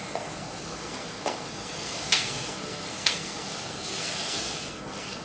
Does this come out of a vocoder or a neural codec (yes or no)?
yes